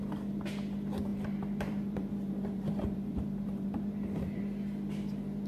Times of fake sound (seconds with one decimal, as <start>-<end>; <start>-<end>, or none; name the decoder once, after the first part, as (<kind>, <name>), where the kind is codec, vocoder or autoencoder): 1.1-4.4 (vocoder, BigVGAN v2)